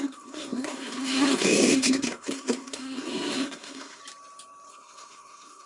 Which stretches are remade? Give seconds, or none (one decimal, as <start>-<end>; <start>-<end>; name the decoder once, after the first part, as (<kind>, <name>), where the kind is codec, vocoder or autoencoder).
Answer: 0.0-4.0 (codec, SNAC); 4.7-5.7